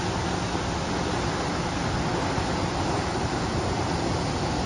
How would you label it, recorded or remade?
recorded